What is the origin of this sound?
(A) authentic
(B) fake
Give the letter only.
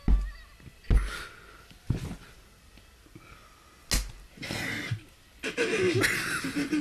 A